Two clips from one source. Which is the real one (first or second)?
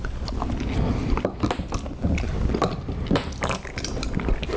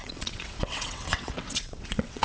first